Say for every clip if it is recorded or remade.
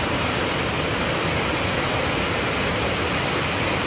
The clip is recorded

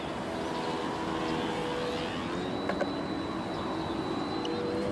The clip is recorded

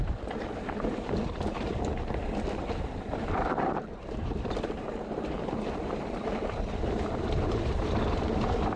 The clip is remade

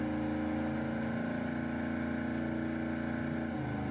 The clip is recorded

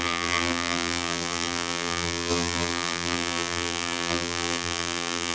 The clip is remade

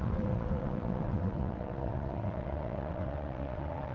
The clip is remade